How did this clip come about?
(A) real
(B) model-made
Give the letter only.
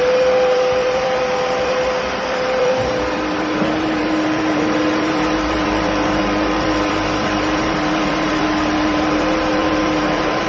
B